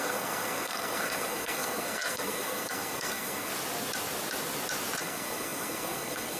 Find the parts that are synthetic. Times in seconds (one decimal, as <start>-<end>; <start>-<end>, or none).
0.0-3.5; 5.0-6.4